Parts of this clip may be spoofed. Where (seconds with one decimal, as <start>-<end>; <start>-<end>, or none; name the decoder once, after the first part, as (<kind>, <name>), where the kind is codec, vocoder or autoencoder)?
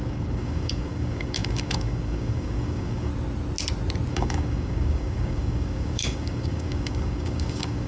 0.0-3.1 (codec, DAC); 4.1-7.9